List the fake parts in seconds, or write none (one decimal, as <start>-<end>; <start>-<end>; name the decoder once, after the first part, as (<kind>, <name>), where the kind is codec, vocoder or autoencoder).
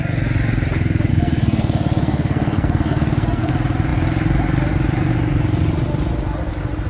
1.1-3.5 (codec, SNAC)